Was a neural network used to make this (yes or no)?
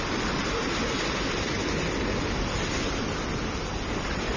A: no